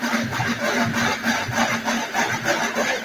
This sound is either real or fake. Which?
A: real